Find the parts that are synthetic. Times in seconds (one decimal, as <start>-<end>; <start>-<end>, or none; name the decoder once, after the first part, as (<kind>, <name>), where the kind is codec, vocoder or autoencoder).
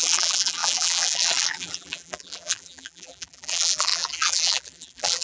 0.0-5.2 (vocoder, BigVGAN v2)